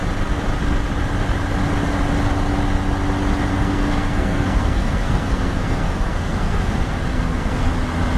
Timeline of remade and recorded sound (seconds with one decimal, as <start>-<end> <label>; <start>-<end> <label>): 0.0-3.5 recorded; 3.5-7.7 remade; 7.7-8.2 recorded